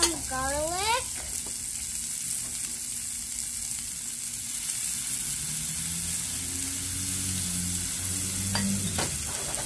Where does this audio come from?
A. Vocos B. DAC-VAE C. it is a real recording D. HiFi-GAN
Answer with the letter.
C